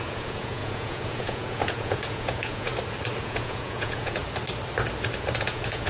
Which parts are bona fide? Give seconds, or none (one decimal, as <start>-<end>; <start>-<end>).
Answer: 2.7-3.2; 4.2-5.4